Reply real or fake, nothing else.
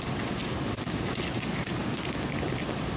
real